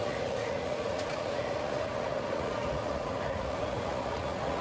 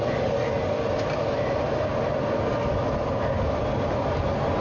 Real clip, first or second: second